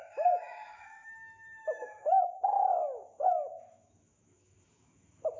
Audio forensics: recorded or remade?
remade